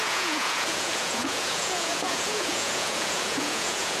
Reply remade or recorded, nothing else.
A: remade